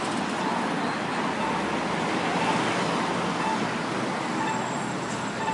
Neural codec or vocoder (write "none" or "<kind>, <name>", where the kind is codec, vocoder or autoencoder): none